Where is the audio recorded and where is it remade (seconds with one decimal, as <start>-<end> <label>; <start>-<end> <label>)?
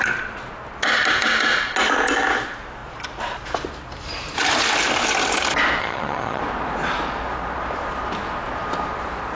0.0-5.8 recorded; 5.8-6.4 remade; 6.4-9.3 recorded